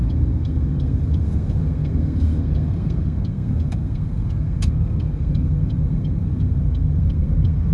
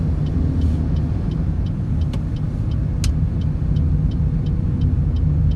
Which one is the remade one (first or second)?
first